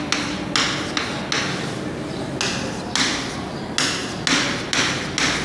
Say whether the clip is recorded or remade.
recorded